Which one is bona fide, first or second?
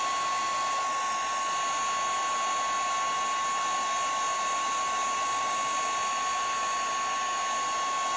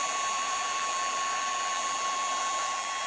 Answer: first